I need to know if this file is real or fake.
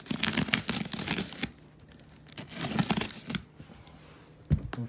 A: real